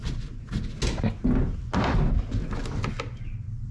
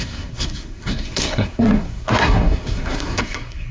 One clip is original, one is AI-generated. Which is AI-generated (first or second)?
second